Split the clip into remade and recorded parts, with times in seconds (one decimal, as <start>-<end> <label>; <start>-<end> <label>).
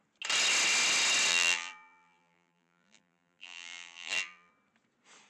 0.0-1.3 recorded; 1.3-4.5 remade; 4.5-5.3 recorded